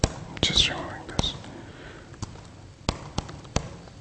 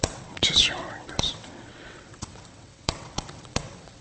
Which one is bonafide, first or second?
first